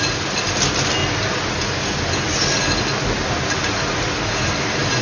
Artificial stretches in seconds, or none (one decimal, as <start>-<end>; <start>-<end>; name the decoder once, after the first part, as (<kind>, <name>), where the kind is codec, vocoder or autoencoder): none